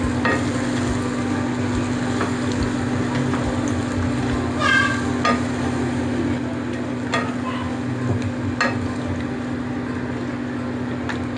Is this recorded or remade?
recorded